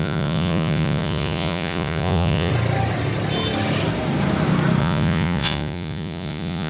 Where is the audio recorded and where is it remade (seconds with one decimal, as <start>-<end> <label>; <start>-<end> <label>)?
0.0-2.5 remade; 2.5-4.8 recorded; 4.8-6.7 remade